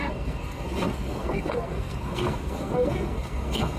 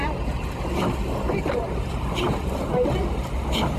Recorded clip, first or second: second